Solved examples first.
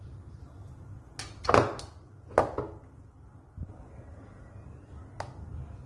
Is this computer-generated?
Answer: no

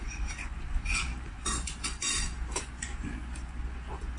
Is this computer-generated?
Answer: yes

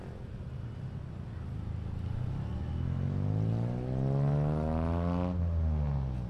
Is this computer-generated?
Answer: no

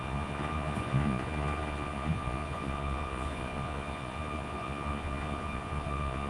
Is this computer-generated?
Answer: yes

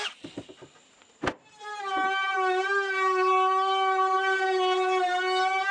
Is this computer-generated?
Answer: no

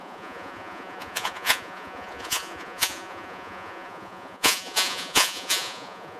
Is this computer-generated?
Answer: yes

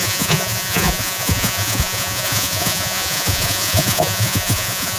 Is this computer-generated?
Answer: yes